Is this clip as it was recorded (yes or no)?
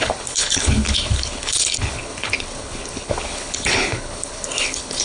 no